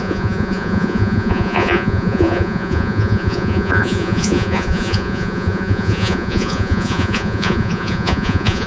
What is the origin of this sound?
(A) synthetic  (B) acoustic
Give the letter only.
A